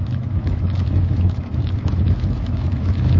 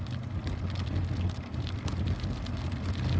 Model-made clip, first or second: first